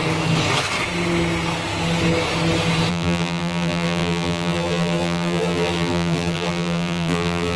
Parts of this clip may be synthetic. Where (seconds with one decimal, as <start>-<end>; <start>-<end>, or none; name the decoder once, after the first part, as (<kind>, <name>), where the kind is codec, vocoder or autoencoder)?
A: 2.9-7.6 (vocoder, BigVGAN v2)